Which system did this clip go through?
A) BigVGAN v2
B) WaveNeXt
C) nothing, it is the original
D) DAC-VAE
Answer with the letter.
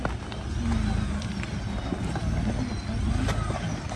C